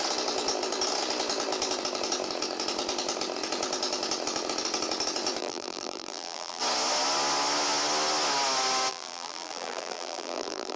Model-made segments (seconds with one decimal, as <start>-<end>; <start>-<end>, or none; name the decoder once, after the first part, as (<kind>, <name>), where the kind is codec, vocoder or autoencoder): 5.4-6.6 (vocoder, BigVGAN v2); 8.9-10.8